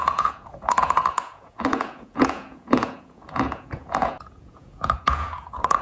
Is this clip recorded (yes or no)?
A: no